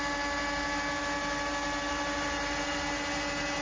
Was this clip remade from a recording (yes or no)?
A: no